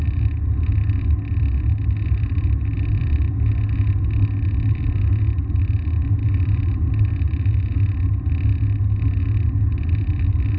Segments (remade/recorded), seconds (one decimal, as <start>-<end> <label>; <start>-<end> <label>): 0.0-6.2 recorded; 6.2-6.8 remade; 6.8-10.6 recorded